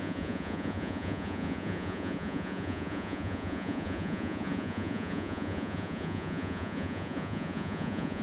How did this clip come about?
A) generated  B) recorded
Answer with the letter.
A